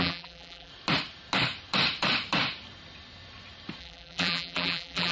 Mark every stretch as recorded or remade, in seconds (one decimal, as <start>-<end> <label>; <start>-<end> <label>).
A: 0.0-0.7 remade; 0.7-3.8 recorded; 3.8-5.1 remade